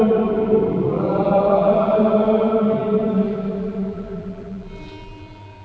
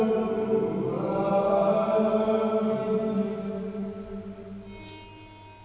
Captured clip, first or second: second